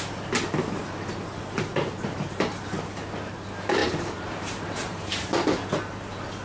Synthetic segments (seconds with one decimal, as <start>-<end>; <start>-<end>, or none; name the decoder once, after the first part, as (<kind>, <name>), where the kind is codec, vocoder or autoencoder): 3.8-5.5 (vocoder, BigVGAN v2)